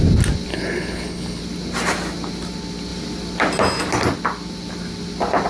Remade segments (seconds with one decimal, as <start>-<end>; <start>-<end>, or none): 0.5-1.4